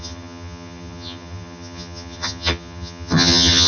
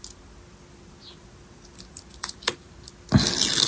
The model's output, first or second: first